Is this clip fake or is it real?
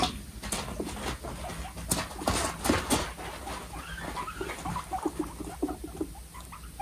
real